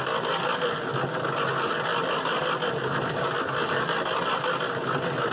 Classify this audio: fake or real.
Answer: real